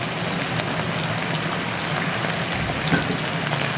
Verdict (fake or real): real